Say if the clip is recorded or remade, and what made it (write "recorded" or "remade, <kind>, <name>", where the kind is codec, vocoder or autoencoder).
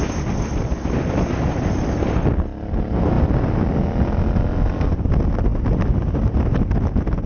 recorded